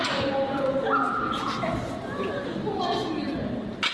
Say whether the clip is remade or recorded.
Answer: recorded